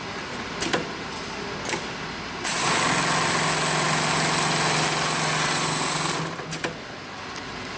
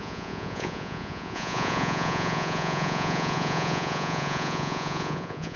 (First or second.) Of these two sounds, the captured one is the first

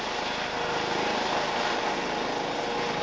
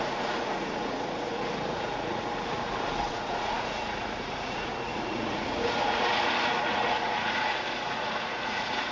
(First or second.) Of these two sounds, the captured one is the first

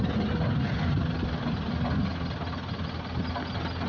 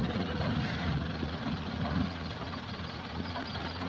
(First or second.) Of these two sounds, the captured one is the first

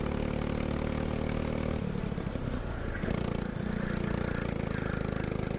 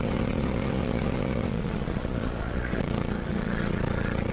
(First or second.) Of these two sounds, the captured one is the first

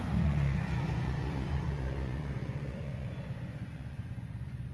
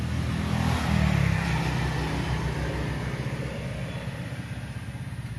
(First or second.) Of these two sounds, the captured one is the second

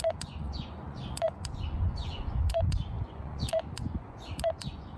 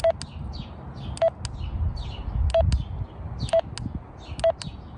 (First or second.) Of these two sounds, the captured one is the second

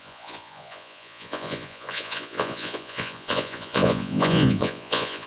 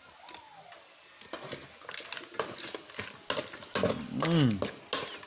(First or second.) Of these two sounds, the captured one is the second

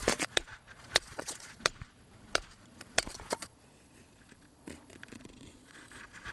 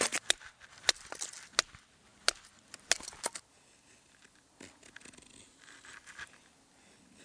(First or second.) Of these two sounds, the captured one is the second